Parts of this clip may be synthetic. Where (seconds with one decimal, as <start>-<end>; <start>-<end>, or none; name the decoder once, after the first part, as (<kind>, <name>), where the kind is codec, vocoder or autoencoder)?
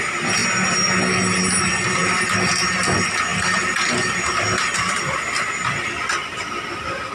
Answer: 2.0-2.5 (vocoder, BigVGAN v2); 3.3-5.0; 6.2-7.1